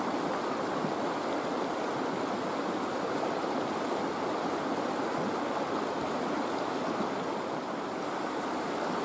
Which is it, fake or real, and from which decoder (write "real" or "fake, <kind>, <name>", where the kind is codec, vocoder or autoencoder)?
real